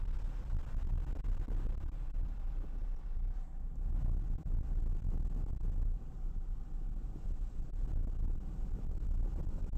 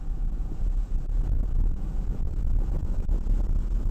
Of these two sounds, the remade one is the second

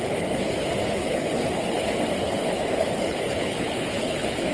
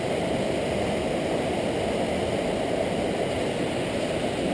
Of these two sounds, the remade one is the first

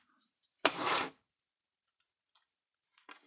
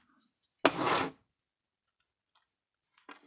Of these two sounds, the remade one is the first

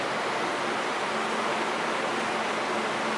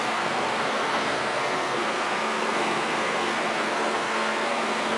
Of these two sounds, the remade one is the second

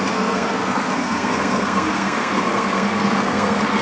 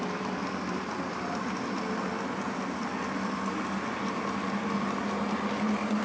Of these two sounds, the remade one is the first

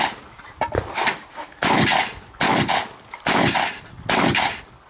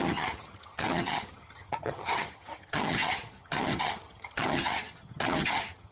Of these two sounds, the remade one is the second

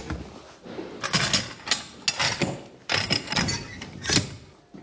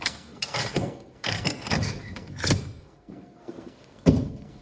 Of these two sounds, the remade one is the second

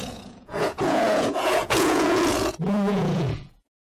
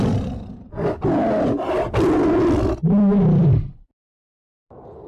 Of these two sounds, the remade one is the first